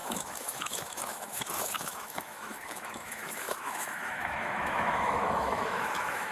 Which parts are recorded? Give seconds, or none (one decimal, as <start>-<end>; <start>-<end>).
none